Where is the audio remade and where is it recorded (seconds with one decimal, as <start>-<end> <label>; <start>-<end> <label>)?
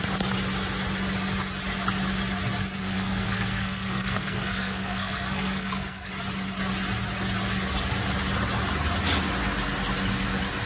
0.0-2.8 recorded; 2.8-6.1 remade; 6.1-10.7 recorded